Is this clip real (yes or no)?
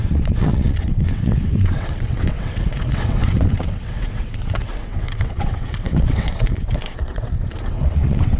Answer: no